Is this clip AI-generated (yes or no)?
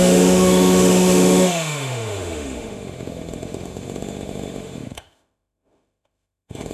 yes